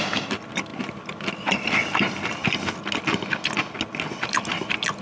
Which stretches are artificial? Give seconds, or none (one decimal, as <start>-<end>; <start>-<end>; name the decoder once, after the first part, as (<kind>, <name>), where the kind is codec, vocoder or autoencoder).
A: none